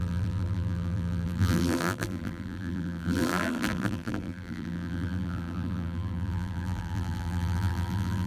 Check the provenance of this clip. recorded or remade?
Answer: remade